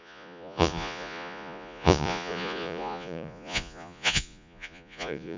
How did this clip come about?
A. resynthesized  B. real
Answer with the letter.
A